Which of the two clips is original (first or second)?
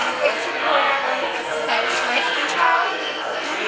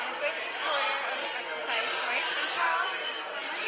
second